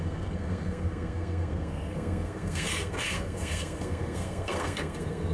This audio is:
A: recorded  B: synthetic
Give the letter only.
B